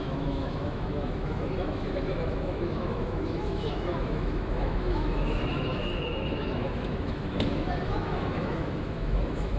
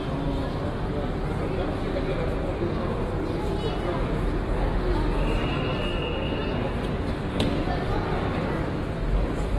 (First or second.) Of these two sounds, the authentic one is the second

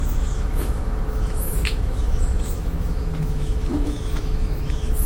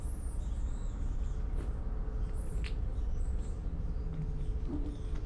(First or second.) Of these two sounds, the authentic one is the second